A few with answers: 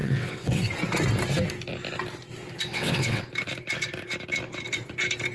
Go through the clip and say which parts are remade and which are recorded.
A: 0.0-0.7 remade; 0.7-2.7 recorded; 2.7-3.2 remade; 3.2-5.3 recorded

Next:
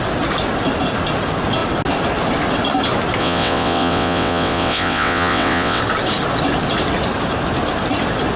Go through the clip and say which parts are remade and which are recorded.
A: 0.0-3.2 recorded; 3.2-5.8 remade; 5.8-8.4 recorded

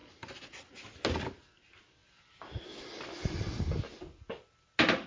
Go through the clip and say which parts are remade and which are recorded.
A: 0.0-5.1 recorded

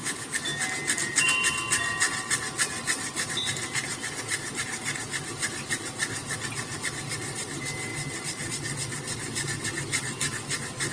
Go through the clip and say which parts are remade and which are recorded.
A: 0.0-10.9 recorded